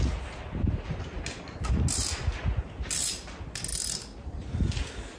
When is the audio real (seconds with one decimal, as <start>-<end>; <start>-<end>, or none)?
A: 0.0-5.2